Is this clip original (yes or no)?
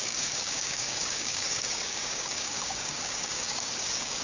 no